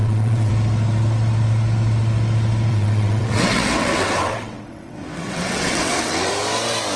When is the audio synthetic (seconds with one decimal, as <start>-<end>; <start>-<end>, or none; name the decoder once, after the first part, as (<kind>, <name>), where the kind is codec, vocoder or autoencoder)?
0.0-0.5 (vocoder, WaveNeXt); 2.7-6.3